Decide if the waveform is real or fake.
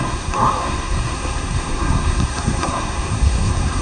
fake